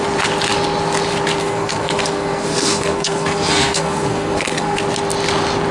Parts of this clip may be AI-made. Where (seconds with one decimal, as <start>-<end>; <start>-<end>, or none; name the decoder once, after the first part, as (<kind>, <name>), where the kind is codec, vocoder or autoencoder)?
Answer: 1.4-4.8 (codec, SNAC)